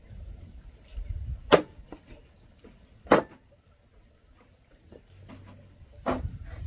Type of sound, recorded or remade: recorded